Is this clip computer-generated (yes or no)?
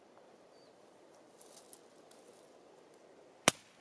no